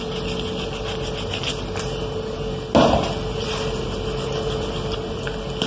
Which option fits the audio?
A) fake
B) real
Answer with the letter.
B